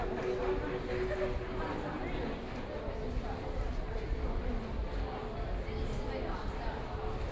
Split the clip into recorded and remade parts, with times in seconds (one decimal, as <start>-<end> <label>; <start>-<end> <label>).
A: 0.0-7.3 recorded